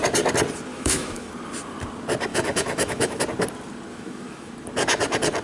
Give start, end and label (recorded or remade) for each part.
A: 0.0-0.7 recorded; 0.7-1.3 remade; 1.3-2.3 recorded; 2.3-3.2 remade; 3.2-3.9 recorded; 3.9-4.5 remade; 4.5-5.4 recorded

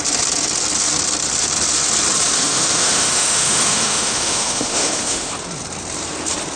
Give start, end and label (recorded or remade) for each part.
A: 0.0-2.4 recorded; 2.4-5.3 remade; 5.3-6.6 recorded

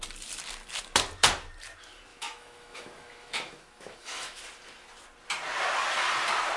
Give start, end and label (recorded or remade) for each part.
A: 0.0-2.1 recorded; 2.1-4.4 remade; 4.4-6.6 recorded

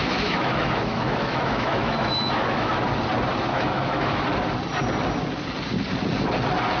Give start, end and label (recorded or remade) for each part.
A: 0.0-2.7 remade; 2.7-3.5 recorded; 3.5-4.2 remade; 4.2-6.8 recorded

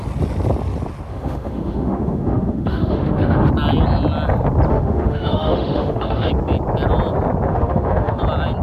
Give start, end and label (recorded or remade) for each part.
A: 0.0-1.1 recorded; 1.1-3.5 remade; 3.5-4.7 recorded; 4.7-6.3 remade; 6.3-7.5 recorded; 7.5-8.2 remade; 8.2-8.6 recorded

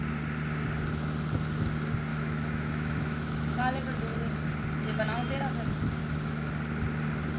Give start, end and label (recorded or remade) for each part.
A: 0.0-2.1 recorded; 2.1-3.6 remade; 3.6-6.0 recorded; 6.0-6.5 remade; 6.5-7.4 recorded